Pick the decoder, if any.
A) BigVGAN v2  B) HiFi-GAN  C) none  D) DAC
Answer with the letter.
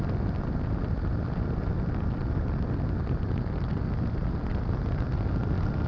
C